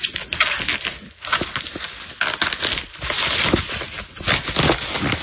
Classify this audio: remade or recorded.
recorded